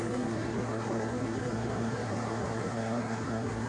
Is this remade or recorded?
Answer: remade